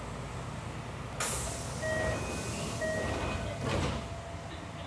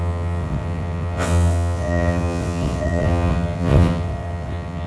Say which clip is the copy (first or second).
second